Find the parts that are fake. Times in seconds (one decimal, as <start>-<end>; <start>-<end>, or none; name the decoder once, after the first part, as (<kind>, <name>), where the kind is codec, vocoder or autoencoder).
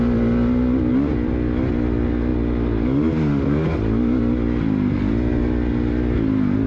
none